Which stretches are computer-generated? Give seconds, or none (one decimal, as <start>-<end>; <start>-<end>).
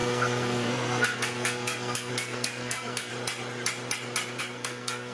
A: 0.0-3.1; 4.4-5.1